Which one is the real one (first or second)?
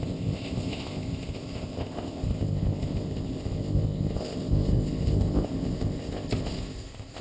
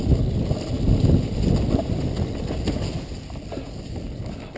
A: second